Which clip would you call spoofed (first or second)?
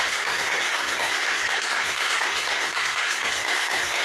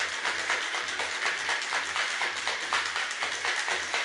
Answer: first